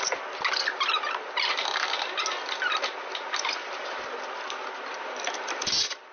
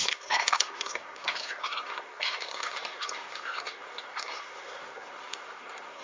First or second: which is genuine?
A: first